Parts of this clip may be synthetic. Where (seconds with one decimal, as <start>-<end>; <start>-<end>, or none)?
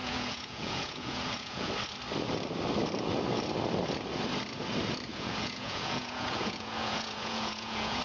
0.0-1.7; 5.1-8.0